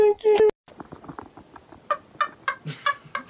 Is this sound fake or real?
real